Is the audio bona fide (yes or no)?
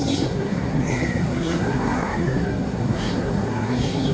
no